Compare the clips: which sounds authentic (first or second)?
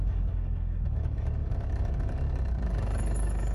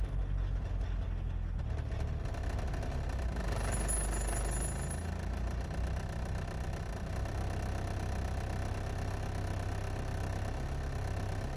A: second